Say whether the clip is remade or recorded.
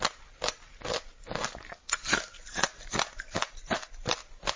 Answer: recorded